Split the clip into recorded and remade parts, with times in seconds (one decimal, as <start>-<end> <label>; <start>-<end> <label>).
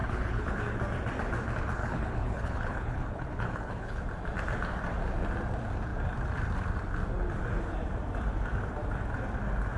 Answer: 0.0-0.6 remade; 0.6-1.8 recorded; 1.8-4.0 remade; 4.0-9.8 recorded